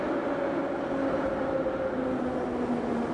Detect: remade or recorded recorded